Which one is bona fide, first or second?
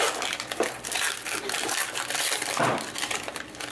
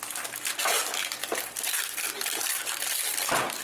second